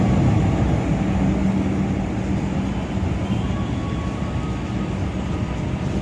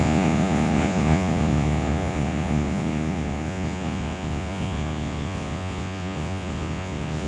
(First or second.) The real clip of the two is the first